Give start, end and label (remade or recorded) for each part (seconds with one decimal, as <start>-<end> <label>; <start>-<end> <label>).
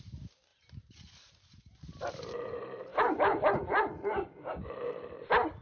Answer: 0.0-0.5 recorded; 0.5-2.1 remade; 2.1-5.6 recorded